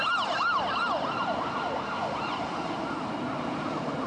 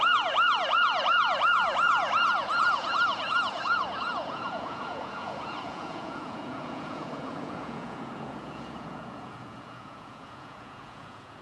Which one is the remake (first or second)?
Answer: second